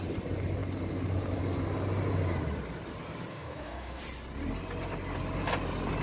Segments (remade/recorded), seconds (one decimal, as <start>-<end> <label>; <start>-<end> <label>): 0.0-3.3 recorded; 3.3-4.0 remade; 4.0-6.0 recorded